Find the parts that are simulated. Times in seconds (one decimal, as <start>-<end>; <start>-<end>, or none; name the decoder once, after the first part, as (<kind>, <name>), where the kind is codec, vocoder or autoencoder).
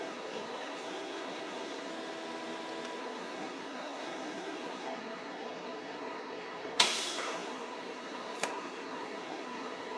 0.0-1.9 (codec, SNAC); 3.0-10.0